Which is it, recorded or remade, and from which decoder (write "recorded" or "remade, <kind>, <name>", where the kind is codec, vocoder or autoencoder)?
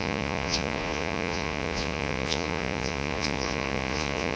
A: remade, vocoder, Vocos